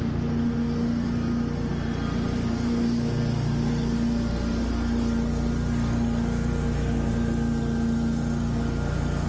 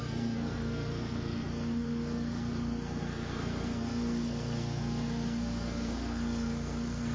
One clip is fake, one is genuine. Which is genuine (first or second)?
first